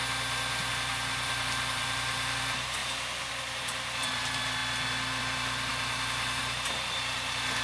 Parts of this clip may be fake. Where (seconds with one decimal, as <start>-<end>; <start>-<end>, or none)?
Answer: 0.7-2.8; 3.3-4.6; 5.2-7.6